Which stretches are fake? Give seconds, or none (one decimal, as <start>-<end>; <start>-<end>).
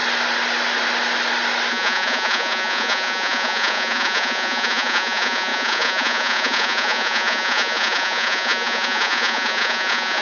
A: 1.7-10.2